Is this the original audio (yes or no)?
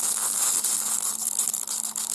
no